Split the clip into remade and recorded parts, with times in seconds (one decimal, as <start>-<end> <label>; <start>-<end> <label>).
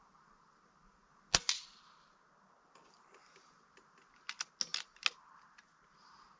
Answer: 0.0-6.4 recorded